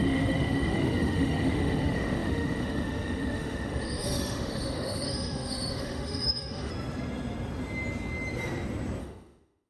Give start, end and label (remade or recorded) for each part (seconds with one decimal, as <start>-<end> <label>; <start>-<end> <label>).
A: 0.0-6.7 remade; 6.7-9.0 recorded; 9.0-9.7 remade